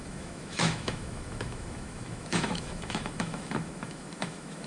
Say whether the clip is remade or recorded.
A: remade